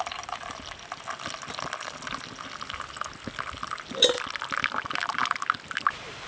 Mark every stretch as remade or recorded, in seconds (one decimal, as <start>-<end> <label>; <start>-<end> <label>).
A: 0.0-6.3 recorded